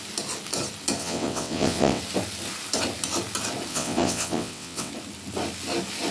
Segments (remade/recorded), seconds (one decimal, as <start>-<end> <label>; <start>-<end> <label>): 0.0-1.0 recorded; 1.0-2.0 remade; 2.0-3.7 recorded; 3.7-4.9 remade; 4.9-6.1 recorded